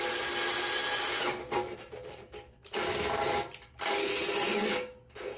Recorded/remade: recorded